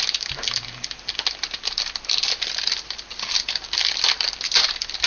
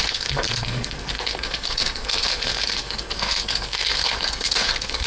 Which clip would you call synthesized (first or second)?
second